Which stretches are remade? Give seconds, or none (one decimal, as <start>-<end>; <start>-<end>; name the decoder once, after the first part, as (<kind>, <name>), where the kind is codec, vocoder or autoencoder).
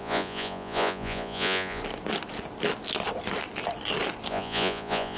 0.0-1.8 (vocoder, Vocos); 4.3-5.2